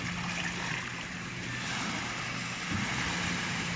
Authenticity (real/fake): real